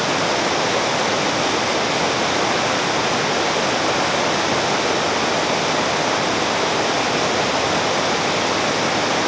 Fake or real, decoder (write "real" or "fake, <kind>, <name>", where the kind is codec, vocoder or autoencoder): real